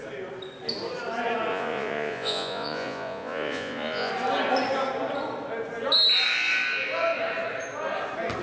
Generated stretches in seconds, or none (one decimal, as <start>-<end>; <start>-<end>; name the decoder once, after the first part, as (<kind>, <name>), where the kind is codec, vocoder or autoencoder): 1.5-4.1 (vocoder, Vocos)